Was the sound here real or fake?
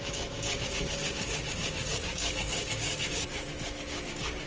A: fake